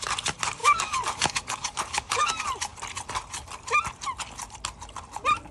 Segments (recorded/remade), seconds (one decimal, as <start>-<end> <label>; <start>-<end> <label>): 0.0-0.6 recorded; 0.6-2.3 remade; 2.3-5.5 recorded